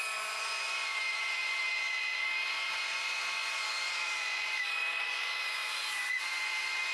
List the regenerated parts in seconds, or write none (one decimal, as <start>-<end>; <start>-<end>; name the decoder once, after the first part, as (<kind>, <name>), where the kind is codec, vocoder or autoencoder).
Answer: 0.0-6.9 (vocoder, Vocos)